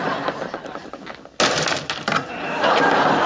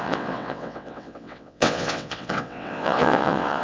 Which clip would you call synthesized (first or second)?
second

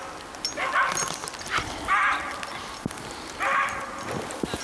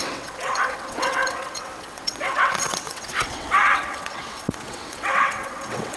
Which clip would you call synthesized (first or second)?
second